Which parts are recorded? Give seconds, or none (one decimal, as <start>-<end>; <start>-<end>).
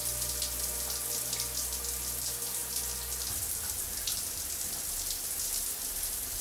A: 0.0-6.4